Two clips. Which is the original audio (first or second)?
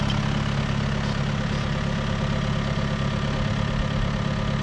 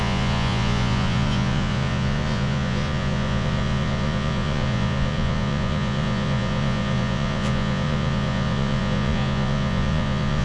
first